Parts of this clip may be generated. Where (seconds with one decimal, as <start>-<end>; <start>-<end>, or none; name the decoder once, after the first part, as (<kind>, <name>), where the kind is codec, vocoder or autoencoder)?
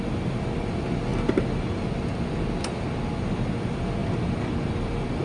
none